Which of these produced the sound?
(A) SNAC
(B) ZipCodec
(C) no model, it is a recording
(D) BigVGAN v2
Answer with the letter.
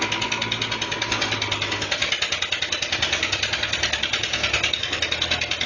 C